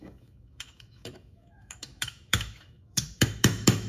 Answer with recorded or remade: remade